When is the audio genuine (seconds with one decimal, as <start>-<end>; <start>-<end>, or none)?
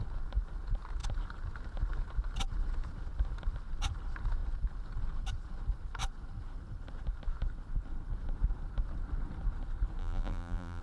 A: 0.0-10.0